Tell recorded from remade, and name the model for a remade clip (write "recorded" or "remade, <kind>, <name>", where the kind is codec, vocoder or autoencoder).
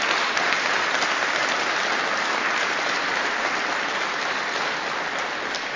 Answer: recorded